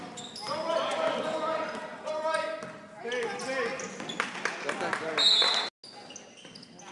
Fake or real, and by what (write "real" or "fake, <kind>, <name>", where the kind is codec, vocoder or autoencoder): real